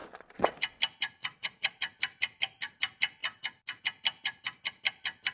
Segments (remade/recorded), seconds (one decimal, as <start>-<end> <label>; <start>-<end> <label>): 0.0-0.6 remade; 0.6-1.2 recorded; 1.2-1.8 remade; 1.8-5.3 recorded